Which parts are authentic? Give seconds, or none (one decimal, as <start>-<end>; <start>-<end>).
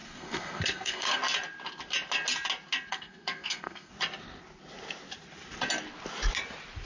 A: 1.2-2.9; 3.9-6.9